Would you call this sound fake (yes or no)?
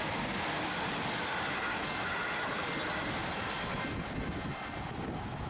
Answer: no